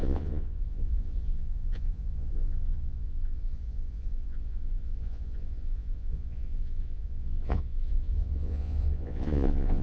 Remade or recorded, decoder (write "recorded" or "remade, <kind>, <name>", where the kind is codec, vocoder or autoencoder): remade, vocoder, Vocos